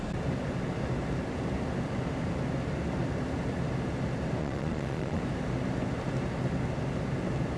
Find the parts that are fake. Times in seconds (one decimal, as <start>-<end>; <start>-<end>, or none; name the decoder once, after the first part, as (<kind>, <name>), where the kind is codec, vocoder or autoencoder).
4.4-5.2 (vocoder, Vocos)